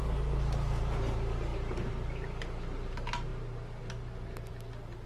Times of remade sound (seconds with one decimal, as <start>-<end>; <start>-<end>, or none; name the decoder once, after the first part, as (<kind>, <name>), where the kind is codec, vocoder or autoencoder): none